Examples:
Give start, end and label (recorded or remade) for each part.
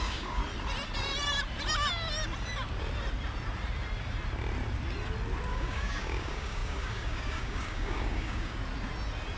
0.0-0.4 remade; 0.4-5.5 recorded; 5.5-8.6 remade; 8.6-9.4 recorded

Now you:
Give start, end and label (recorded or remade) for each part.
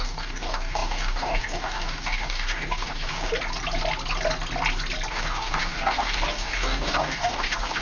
0.0-3.3 remade; 3.3-5.1 recorded; 5.1-7.8 remade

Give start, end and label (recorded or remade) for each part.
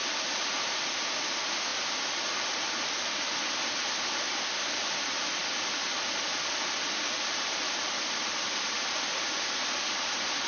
0.0-10.5 recorded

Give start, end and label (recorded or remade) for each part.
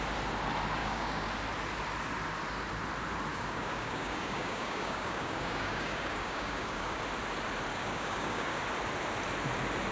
0.0-0.8 recorded; 0.8-1.3 remade; 1.3-3.3 recorded; 3.3-7.0 remade; 7.0-7.7 recorded; 7.7-8.6 remade; 8.6-9.9 recorded